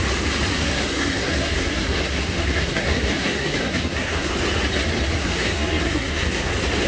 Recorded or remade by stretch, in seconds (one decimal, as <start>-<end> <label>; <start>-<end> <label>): 0.0-0.5 recorded; 0.5-4.3 remade; 4.3-5.2 recorded; 5.2-6.5 remade; 6.5-6.9 recorded